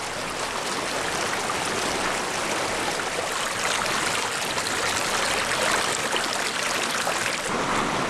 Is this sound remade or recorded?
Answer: recorded